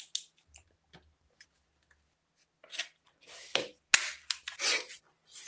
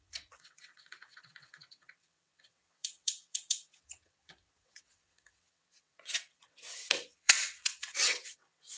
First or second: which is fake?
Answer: second